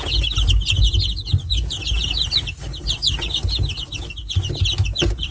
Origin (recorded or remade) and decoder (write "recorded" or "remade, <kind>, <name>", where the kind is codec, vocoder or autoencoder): recorded